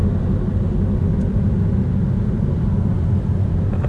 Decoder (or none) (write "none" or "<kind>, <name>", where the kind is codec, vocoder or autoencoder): none